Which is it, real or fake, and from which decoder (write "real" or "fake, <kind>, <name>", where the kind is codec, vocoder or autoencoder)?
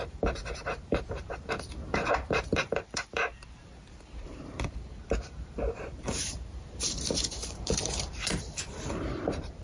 fake, vocoder, BigVGAN v2